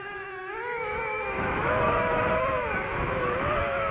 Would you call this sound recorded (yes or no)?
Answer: no